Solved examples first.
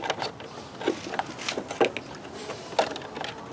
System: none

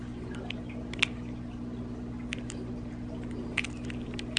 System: none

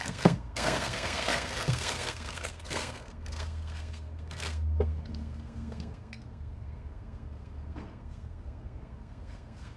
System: codec, SNAC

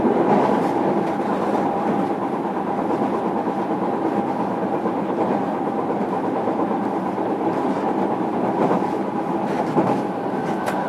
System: none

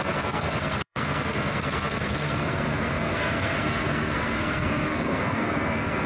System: codec, SNAC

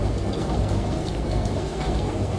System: codec, SNAC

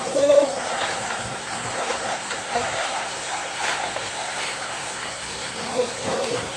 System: codec, SNAC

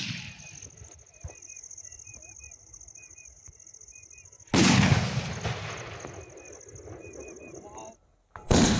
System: none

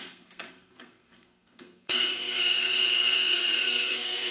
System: codec, SNAC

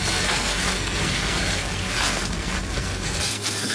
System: codec, SNAC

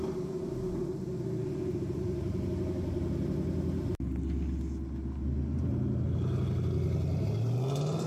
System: none